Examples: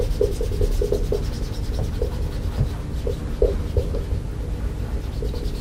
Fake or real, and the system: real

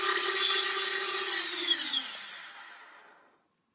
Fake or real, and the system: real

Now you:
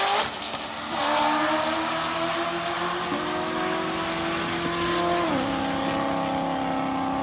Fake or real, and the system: real